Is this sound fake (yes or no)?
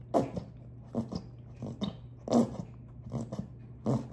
no